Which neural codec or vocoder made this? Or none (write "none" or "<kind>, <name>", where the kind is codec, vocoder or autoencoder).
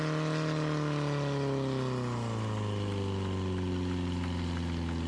none